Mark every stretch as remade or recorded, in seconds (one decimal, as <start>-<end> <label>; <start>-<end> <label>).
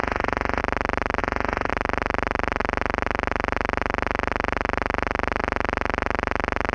0.0-0.6 remade; 0.6-1.2 recorded; 1.2-1.7 remade; 1.7-6.7 recorded